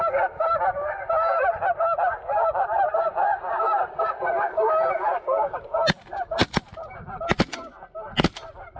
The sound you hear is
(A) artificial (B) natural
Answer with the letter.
B